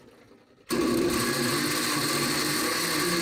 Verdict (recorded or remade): recorded